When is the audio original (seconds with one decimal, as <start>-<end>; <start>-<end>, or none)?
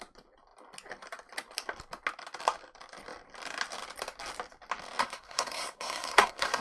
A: 0.0-5.0